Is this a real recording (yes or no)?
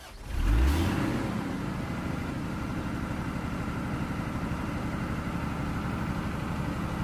yes